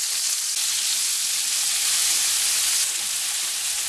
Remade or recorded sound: recorded